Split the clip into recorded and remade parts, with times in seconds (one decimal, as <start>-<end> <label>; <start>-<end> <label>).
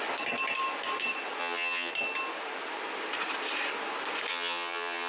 0.0-1.4 recorded; 1.4-1.9 remade; 1.9-4.3 recorded; 4.3-5.1 remade